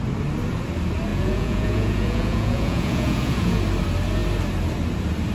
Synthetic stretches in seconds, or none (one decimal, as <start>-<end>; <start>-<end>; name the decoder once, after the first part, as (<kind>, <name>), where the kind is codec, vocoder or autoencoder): 1.1-3.6 (vocoder, Vocos)